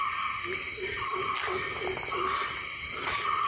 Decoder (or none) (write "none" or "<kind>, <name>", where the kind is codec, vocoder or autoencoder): none